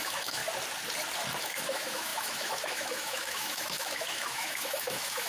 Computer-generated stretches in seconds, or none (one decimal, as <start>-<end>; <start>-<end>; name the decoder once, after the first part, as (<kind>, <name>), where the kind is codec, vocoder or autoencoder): 0.0-0.4 (autoencoder, DAC-VAE); 1.4-5.3

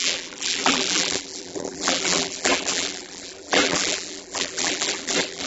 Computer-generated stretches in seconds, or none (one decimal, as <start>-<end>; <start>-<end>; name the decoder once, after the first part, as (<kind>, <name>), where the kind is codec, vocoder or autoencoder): 0.0-5.5 (vocoder, BigVGAN v2)

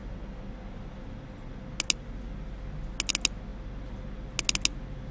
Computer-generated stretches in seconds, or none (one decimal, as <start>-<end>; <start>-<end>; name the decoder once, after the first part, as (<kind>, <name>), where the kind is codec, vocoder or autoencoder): none